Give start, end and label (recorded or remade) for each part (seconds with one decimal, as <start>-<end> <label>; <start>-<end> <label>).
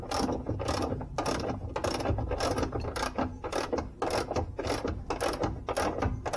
0.0-6.4 recorded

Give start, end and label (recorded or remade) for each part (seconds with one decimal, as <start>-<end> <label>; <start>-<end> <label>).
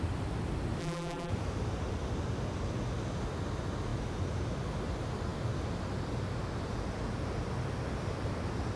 0.0-0.8 recorded; 0.8-1.3 remade; 1.3-8.8 recorded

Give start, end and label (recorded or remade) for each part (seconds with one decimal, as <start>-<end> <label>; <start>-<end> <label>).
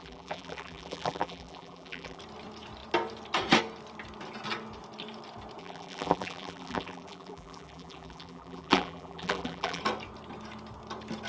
0.0-2.2 remade; 2.2-5.6 recorded; 5.6-9.8 remade; 9.8-11.3 recorded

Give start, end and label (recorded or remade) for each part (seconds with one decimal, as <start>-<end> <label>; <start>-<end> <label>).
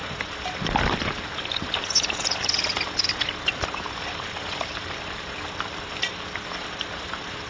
0.0-7.5 recorded